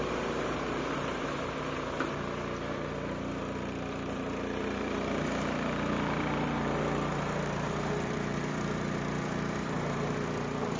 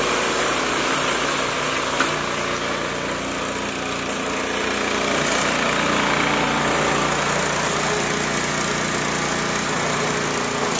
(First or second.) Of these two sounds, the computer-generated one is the first